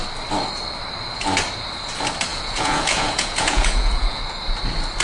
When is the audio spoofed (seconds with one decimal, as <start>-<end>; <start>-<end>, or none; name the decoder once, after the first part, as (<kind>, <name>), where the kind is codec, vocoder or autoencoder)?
2.3-4.2 (vocoder, Vocos)